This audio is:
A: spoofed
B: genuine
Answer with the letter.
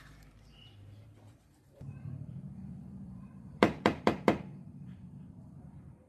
A